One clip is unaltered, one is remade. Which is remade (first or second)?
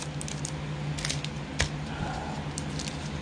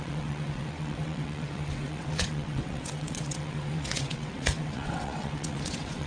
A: second